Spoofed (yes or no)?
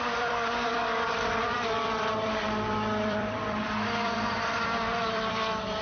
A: yes